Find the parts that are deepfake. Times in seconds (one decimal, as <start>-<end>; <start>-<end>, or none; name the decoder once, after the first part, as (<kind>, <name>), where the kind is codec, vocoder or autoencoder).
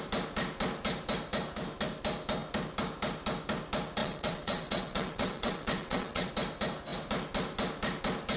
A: 4.0-6.3 (vocoder, WaveNeXt)